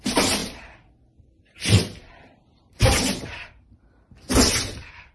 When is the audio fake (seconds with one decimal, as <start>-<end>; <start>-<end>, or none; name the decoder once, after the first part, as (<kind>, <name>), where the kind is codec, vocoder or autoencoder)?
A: none